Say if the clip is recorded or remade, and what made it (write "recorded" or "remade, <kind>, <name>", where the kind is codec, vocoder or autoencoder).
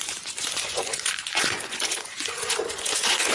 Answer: remade, vocoder, Vocos